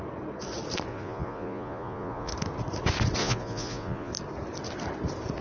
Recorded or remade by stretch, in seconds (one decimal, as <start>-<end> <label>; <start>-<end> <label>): 0.0-0.9 recorded; 0.9-2.3 remade; 2.3-3.2 recorded; 3.2-4.1 remade; 4.1-5.4 recorded